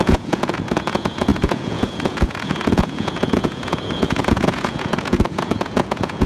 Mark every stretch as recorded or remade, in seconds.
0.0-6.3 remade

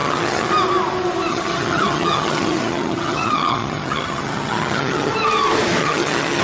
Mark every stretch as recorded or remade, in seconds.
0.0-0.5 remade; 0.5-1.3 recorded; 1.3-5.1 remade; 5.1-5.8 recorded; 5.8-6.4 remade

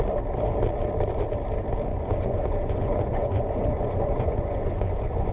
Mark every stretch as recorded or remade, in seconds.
0.0-1.9 recorded; 1.9-5.3 remade

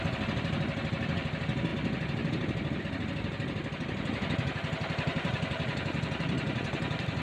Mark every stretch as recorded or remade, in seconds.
0.0-7.2 remade